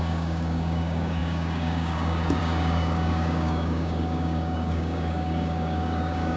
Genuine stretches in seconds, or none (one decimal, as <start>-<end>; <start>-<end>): none